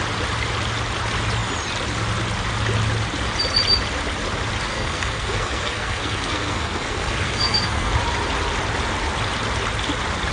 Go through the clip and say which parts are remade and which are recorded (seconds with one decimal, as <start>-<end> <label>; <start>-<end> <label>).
0.0-4.7 recorded; 4.7-7.9 remade; 7.9-10.3 recorded